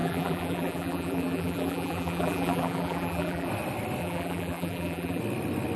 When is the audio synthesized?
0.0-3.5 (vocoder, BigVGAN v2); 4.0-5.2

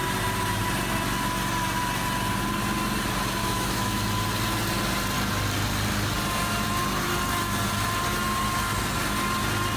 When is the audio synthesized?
3.4-4.0 (autoencoder, DAC-VAE)

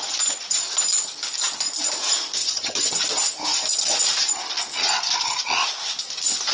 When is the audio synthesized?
2.4-2.9 (vocoder, HiFi-GAN)

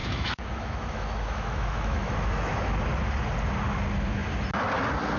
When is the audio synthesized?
0.0-2.7 (autoencoder, DAC-VAE)

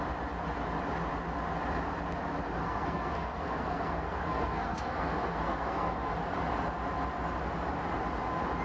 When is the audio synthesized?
2.6-6.1 (codec, SNAC)

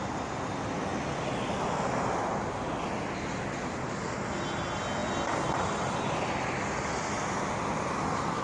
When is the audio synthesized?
none